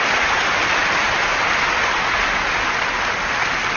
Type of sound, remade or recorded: recorded